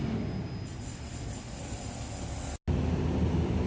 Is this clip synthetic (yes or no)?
no